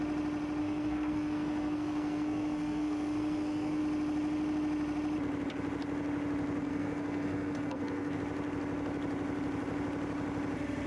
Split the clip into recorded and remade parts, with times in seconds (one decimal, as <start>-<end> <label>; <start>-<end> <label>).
0.0-0.6 recorded; 0.6-3.8 remade; 3.8-6.6 recorded; 6.6-8.2 remade; 8.2-10.9 recorded